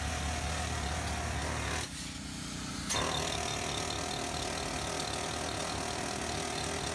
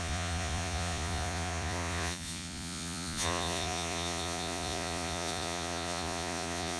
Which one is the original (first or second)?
first